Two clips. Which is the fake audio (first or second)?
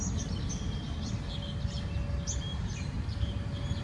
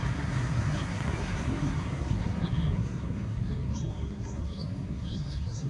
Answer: second